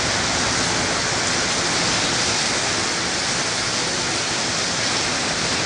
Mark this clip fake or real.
real